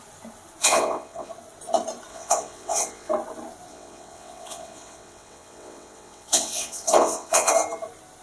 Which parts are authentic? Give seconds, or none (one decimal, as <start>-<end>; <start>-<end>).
0.0-0.6; 1.3-2.1; 3.1-3.7; 7.5-8.2